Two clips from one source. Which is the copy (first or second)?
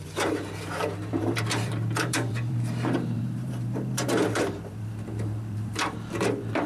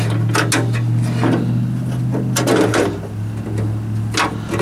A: first